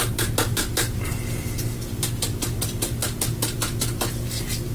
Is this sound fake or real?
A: real